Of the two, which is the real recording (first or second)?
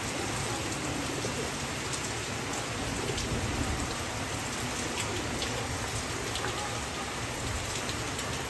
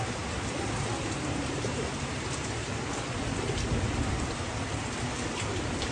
first